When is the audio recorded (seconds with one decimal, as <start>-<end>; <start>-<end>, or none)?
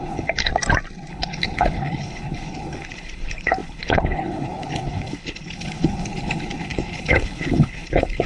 0.5-1.1